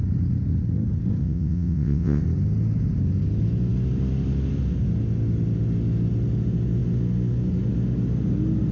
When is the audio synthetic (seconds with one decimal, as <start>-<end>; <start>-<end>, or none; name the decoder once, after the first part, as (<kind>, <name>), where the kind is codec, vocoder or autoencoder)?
1.2-2.2 (vocoder, WaveNeXt)